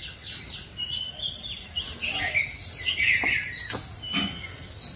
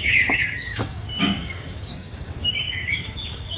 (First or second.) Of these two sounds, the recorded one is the first